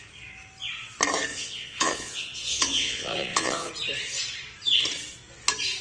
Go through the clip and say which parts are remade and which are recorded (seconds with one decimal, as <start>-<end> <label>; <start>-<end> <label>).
0.0-1.3 recorded; 1.3-3.7 remade; 3.7-5.8 recorded